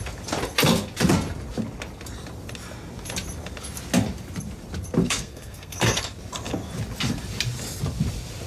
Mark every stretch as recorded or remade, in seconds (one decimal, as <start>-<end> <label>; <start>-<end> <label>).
0.0-5.0 recorded; 5.0-6.0 remade; 6.0-8.5 recorded